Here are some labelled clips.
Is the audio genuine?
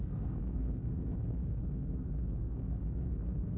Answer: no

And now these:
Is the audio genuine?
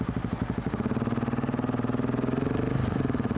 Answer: yes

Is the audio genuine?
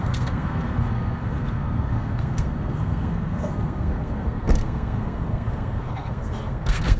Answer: no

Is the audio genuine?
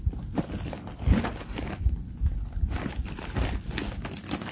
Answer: yes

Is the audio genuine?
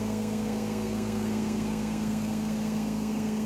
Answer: no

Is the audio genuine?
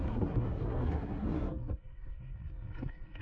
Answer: no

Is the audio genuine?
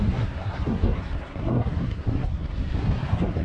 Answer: no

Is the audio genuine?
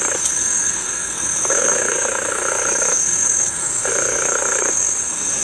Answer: no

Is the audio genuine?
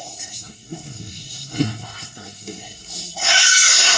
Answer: no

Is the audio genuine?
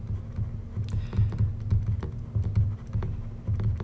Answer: yes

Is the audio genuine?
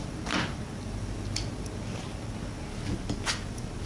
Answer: yes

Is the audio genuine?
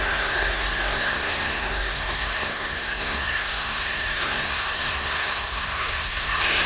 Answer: no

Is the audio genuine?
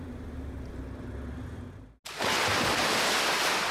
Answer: yes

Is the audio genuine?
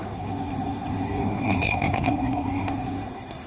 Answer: no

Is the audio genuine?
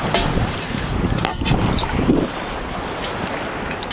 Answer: yes